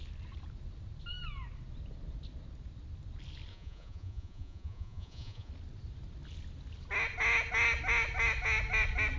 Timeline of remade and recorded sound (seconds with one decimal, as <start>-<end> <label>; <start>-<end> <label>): 0.0-3.5 recorded; 3.5-5.5 remade; 5.5-9.2 recorded